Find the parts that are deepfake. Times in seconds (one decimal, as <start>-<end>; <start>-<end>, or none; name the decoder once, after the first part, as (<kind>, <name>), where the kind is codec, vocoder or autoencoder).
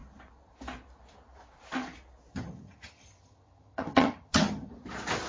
2.3-4.7 (vocoder, HiFi-GAN)